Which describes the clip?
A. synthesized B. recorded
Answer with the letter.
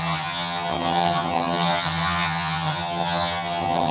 A